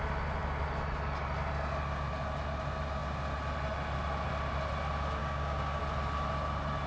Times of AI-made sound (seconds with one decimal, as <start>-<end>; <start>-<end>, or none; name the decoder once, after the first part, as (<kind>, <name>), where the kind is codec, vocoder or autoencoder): 5.2-5.8 (codec, DAC)